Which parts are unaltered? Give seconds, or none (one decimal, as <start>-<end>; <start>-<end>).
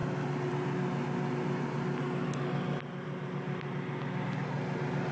0.0-5.1